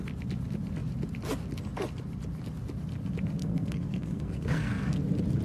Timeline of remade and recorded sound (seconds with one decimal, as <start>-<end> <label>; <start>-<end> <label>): 0.0-3.4 recorded; 3.4-5.0 remade; 5.0-5.4 recorded